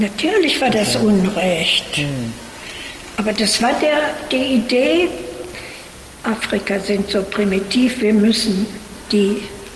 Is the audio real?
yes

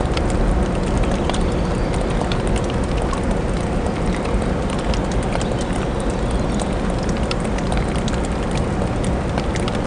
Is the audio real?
yes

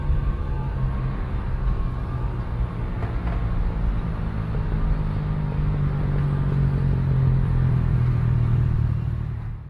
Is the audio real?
yes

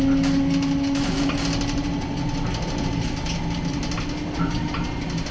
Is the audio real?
yes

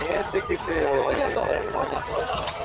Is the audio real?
no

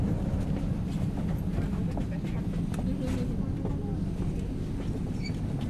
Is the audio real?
yes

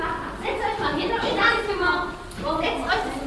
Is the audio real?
yes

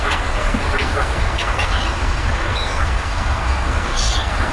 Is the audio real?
no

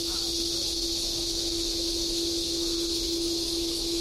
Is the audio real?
no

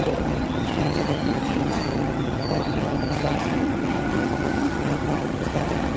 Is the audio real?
no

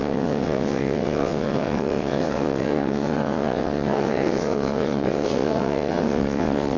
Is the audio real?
no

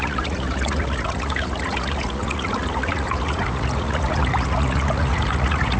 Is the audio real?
no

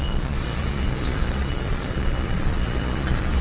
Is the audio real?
no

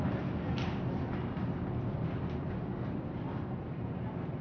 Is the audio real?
yes